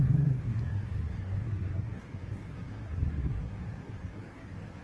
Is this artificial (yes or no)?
yes